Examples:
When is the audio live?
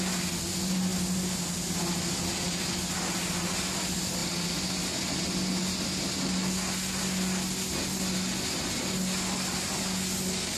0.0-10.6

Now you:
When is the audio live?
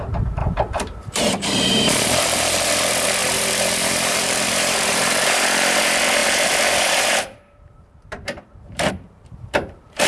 none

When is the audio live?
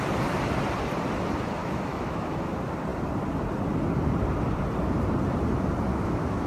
0.0-1.6; 2.4-5.9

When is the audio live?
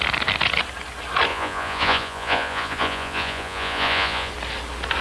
0.0-1.3; 4.3-5.0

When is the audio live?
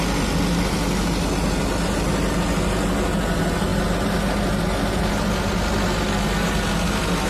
0.0-7.3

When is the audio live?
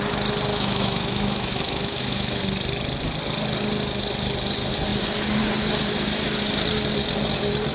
0.0-0.5; 2.4-7.7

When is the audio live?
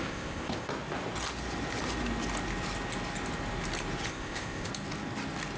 0.7-4.1; 4.7-5.6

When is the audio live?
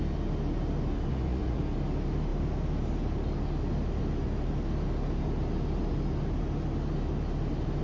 0.0-1.1; 1.6-7.8